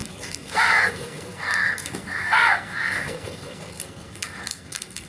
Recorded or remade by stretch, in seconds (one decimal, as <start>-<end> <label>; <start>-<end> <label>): 0.0-5.1 remade